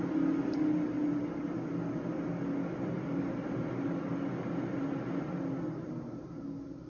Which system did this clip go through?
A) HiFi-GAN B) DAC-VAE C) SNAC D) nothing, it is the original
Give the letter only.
D